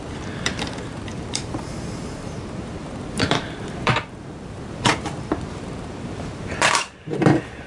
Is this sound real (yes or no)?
no